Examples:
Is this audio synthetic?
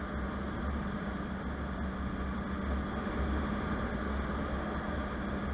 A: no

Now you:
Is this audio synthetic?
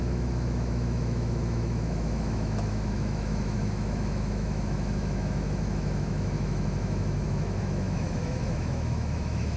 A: yes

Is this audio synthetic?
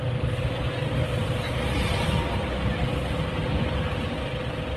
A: no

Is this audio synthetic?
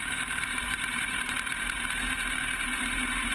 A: yes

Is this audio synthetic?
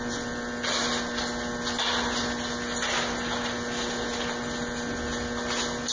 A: no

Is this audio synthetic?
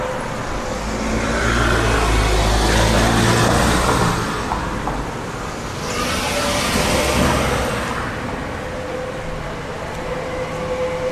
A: no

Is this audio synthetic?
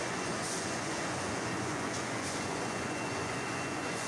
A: yes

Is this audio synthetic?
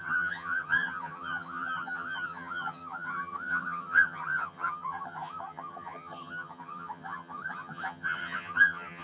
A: yes